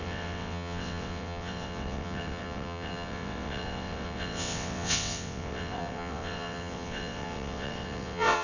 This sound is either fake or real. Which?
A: fake